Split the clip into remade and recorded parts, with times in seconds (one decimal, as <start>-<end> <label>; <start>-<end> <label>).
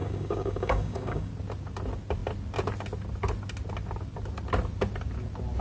0.0-1.3 remade; 1.3-5.6 recorded